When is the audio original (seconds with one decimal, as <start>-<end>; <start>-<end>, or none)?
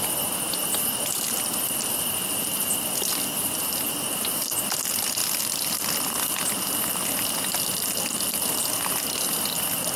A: 0.0-10.0